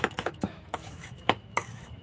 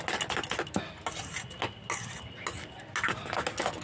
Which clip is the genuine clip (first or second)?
second